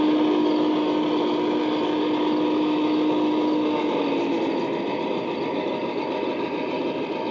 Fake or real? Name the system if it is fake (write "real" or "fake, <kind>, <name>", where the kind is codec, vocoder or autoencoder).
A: real